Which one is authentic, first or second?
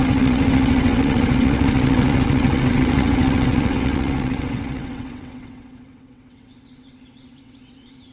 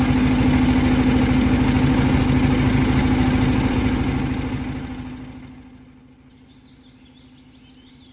second